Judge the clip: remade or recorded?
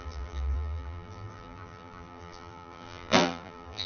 remade